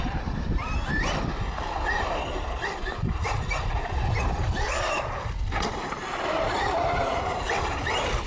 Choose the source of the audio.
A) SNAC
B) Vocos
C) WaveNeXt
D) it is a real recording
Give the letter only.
D